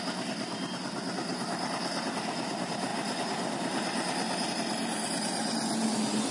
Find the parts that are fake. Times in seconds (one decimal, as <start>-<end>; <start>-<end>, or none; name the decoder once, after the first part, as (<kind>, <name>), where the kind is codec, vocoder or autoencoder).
0.0-1.3 (vocoder, BigVGAN v2); 2.1-2.9; 4.5-6.3